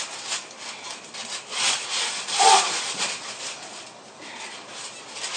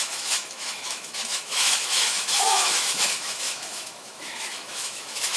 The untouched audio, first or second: first